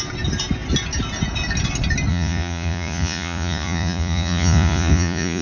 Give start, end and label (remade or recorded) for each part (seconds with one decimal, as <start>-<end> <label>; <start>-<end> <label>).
0.0-2.1 recorded; 2.1-5.4 remade